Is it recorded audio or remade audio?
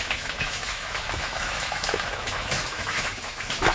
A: remade